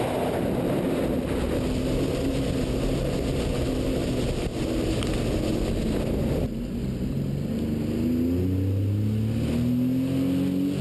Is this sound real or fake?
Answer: real